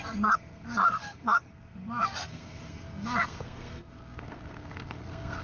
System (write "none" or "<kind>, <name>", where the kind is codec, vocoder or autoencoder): codec, SNAC